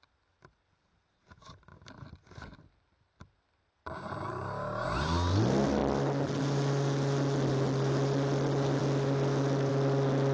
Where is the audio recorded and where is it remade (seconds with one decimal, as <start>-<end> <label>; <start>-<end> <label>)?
0.0-10.3 recorded